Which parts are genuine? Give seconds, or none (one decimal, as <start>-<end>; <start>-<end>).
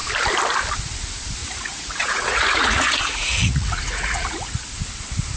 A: 0.0-1.4; 4.6-5.4